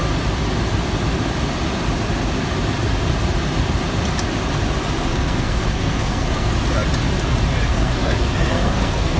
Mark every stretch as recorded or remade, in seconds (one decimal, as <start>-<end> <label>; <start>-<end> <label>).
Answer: 0.0-5.1 recorded; 5.1-6.5 remade; 6.5-7.7 recorded; 7.7-9.2 remade